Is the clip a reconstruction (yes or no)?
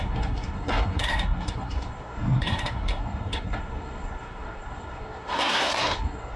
yes